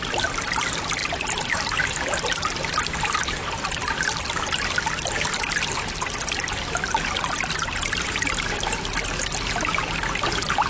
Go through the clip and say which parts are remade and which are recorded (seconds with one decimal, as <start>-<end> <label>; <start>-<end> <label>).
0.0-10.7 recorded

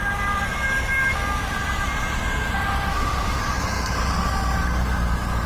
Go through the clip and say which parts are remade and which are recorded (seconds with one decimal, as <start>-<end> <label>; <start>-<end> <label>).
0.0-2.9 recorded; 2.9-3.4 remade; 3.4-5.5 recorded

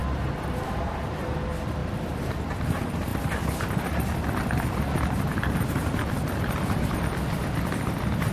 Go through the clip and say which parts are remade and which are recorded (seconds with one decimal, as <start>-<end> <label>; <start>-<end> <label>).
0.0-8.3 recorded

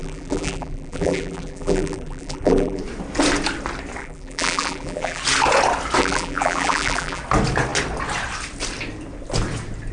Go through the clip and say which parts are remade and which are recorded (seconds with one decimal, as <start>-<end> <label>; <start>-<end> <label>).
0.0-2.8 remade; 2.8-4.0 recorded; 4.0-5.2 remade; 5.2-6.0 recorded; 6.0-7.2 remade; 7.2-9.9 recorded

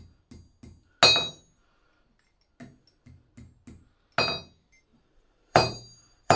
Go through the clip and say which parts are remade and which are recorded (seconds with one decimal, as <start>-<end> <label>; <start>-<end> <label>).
0.0-4.9 recorded; 4.9-6.4 remade

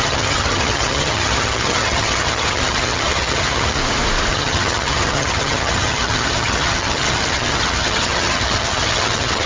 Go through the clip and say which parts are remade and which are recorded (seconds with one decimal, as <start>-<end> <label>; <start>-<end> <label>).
0.0-3.8 remade; 3.8-4.3 recorded; 4.3-9.5 remade

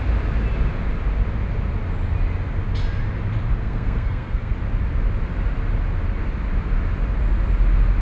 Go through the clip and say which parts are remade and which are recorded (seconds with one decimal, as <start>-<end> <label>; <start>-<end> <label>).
0.0-3.5 recorded; 3.5-4.5 remade; 4.5-8.0 recorded

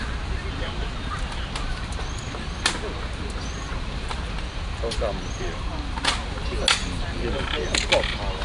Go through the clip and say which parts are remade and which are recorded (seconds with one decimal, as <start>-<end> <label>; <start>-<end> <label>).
0.0-8.4 recorded